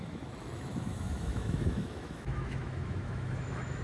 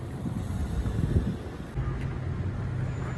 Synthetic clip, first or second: first